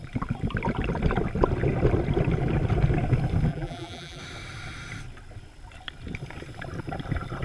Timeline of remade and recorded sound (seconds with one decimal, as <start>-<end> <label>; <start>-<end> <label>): 0.0-3.5 recorded; 3.5-4.2 remade; 4.2-7.4 recorded